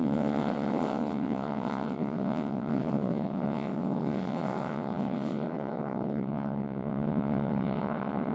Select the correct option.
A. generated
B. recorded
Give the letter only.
A